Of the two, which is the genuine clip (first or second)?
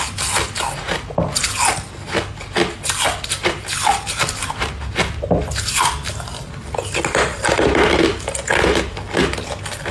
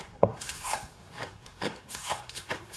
first